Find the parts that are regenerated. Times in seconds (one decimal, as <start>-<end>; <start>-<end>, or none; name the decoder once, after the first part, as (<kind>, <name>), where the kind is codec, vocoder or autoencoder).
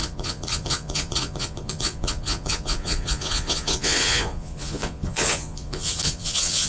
0.0-6.7 (vocoder, Vocos)